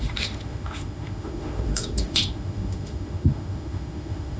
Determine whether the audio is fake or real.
fake